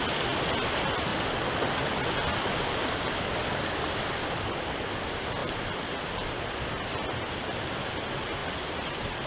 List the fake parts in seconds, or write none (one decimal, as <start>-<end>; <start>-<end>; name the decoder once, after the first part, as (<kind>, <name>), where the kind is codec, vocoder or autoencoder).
1.1-4.8 (vocoder, BigVGAN v2); 8.4-9.3